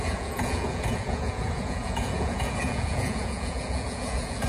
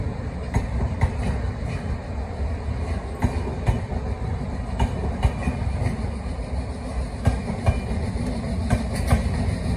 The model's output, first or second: first